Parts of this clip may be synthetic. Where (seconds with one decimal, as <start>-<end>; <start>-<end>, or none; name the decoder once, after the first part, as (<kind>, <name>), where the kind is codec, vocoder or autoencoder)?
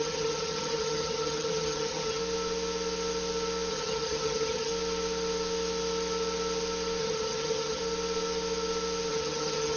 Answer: 0.0-2.2 (vocoder, HiFi-GAN); 3.7-4.7; 7.0-7.8; 9.1-9.8